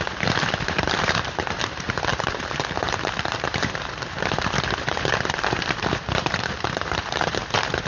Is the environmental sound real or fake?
fake